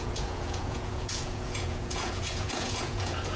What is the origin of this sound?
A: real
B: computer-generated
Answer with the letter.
B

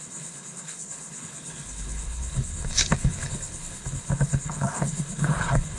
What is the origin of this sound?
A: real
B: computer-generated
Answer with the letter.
B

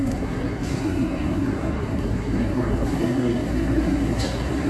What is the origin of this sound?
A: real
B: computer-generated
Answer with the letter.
B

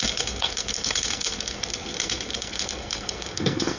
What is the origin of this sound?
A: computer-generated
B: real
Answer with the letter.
A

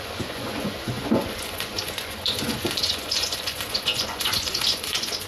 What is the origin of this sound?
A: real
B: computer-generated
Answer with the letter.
B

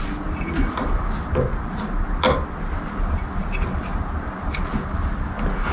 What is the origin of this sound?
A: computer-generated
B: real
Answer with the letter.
B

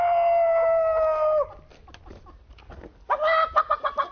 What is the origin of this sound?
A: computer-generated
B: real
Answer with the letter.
B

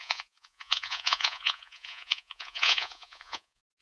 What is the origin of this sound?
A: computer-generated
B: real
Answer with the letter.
A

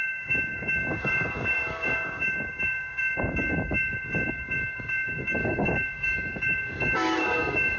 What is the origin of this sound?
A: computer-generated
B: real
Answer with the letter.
A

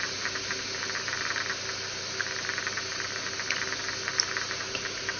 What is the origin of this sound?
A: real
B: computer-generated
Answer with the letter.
A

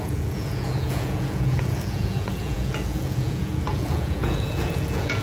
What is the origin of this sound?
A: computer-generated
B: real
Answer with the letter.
A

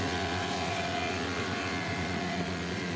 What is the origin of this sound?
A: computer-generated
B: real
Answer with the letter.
A